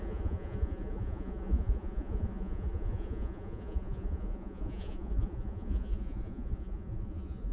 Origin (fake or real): fake